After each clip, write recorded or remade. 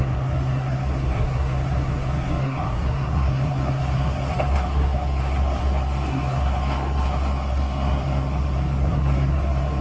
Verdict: remade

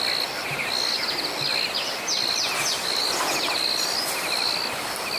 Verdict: recorded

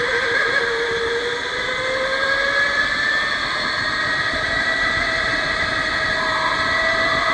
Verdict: recorded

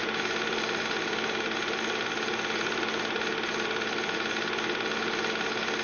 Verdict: recorded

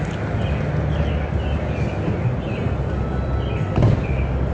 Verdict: recorded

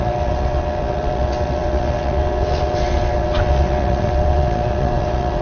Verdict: remade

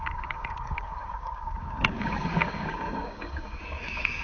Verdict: remade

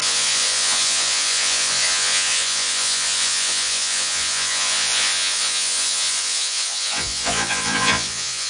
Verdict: remade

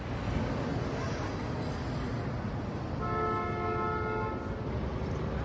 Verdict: recorded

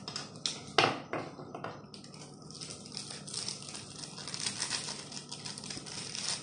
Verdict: recorded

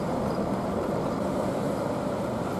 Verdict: remade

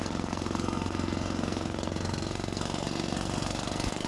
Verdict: remade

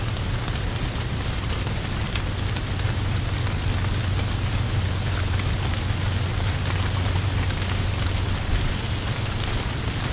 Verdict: recorded